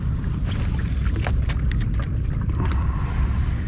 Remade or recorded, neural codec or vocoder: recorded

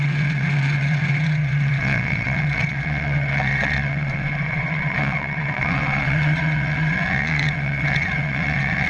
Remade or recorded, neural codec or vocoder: remade, vocoder, WaveNeXt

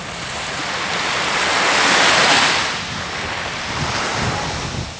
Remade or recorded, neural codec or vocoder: recorded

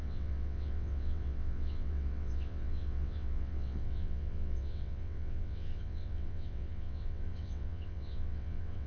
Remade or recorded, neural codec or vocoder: remade, vocoder, WaveNeXt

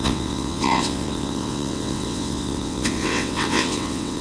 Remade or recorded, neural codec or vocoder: remade, vocoder, WaveNeXt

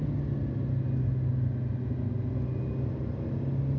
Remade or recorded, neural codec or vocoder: recorded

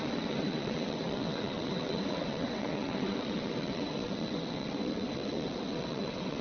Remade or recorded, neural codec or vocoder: remade, vocoder, WaveNeXt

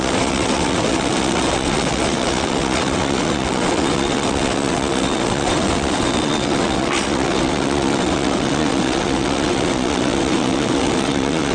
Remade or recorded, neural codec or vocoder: remade, vocoder, WaveNeXt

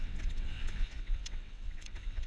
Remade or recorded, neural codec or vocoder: remade, vocoder, WaveNeXt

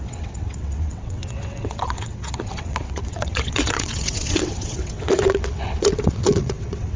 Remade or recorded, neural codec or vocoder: remade, vocoder, WaveNeXt